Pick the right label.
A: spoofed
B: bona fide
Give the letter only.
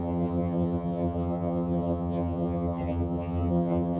A